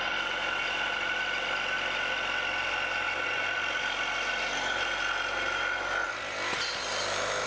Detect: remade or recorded recorded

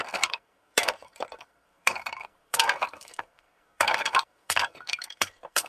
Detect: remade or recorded remade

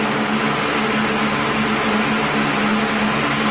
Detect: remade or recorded recorded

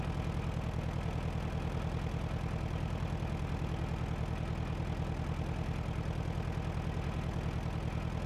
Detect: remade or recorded recorded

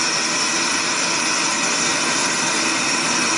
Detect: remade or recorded recorded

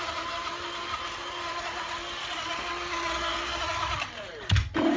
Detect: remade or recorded recorded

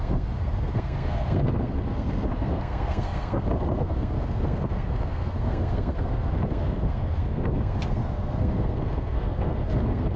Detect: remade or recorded remade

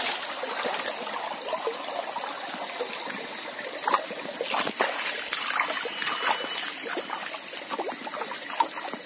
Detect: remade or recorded recorded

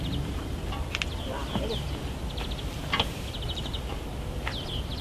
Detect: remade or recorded recorded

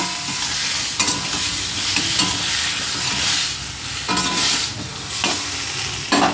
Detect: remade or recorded recorded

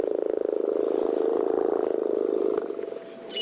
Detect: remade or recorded recorded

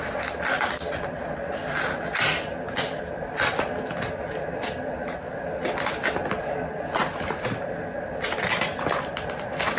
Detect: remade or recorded recorded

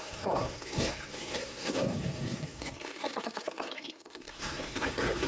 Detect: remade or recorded remade